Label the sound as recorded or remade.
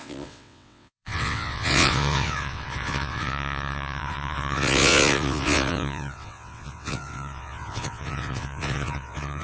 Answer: remade